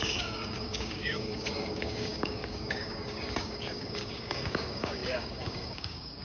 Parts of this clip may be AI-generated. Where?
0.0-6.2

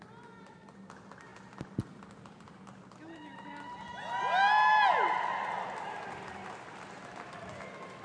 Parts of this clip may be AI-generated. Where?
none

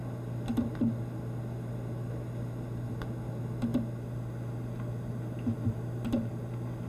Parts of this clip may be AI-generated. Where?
none

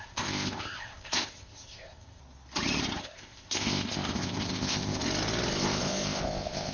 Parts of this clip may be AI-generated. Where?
0.0-2.2; 3.0-5.0; 5.5-6.7